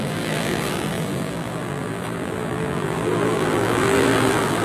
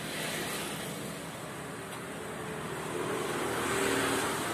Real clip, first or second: second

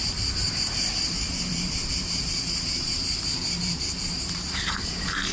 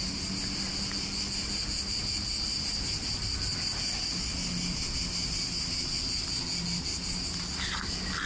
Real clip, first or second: second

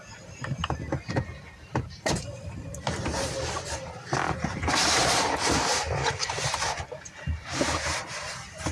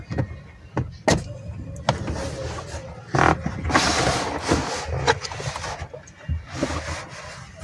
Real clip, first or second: second